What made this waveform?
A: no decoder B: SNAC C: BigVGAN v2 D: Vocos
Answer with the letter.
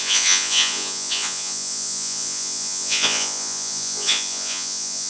D